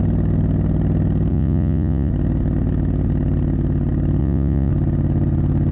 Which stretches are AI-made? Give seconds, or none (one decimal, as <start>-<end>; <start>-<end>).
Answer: 1.3-2.1; 4.2-4.7